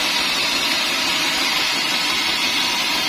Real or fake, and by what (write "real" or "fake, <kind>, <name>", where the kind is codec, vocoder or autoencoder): fake, vocoder, BigVGAN v2